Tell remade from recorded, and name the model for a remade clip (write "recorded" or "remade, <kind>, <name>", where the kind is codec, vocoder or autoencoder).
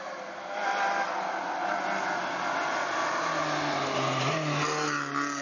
recorded